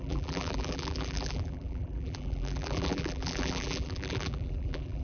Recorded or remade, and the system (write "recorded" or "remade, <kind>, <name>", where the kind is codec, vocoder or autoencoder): remade, vocoder, BigVGAN v2